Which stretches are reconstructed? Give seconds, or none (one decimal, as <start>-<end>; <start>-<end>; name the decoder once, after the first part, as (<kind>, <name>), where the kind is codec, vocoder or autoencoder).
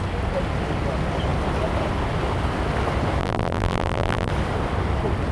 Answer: 3.2-4.3 (vocoder, BigVGAN v2)